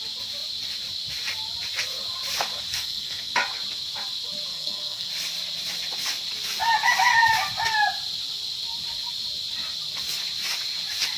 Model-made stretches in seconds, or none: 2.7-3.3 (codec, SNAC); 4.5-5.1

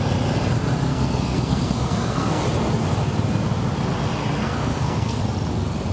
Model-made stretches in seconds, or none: 0.9-2.4 (codec, SNAC); 4.4-5.2

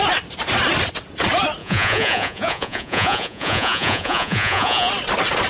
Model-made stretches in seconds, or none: 1.6-4.9 (vocoder, Vocos)

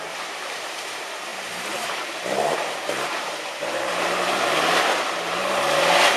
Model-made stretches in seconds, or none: 0.0-6.2 (vocoder, BigVGAN v2)

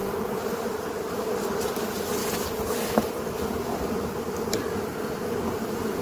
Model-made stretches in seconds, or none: 0.0-2.2 (vocoder, BigVGAN v2); 4.5-6.0

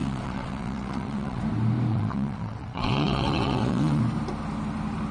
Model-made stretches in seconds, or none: 0.0-1.4 (vocoder, WaveNeXt); 1.9-4.0

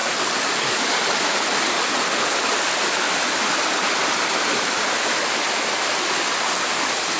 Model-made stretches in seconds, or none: none

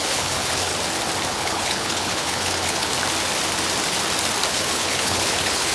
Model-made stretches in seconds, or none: 0.0-0.7 (codec, HILCodec); 1.3-2.9; 4.5-5.7